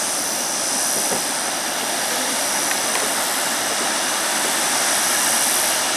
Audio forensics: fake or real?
fake